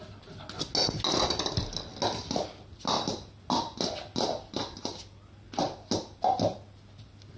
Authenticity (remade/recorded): recorded